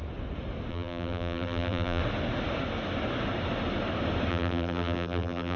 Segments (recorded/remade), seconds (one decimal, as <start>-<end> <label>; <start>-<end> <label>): 0.0-0.7 recorded; 0.7-2.0 remade; 2.0-4.3 recorded; 4.3-5.6 remade